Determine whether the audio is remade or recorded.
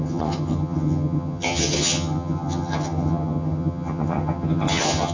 remade